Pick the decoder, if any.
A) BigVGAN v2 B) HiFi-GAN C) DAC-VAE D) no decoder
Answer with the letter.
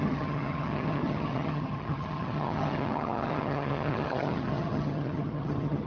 B